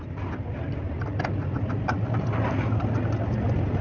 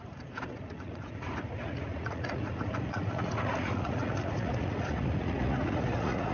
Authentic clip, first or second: first